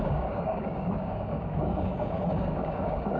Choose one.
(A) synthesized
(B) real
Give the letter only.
A